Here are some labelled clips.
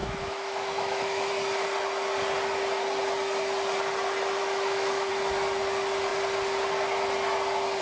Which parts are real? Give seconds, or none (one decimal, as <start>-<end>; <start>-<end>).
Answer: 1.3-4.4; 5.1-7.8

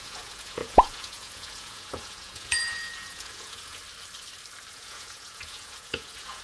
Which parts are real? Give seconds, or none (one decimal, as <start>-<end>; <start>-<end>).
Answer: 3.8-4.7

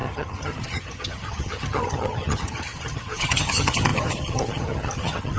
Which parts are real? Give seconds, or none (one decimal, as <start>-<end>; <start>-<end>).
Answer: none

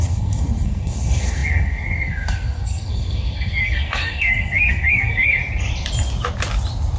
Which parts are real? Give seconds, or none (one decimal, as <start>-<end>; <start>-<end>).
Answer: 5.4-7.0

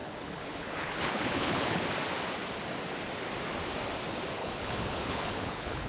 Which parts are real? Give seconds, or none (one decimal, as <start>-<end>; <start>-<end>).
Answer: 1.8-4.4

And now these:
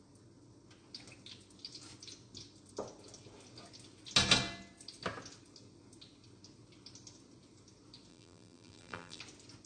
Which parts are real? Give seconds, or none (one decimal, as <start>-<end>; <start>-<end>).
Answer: 0.0-8.1; 9.2-9.7